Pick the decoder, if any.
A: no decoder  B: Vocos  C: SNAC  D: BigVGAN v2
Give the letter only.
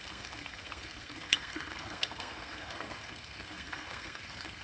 C